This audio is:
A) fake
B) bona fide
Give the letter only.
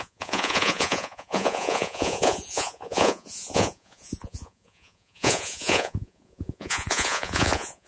A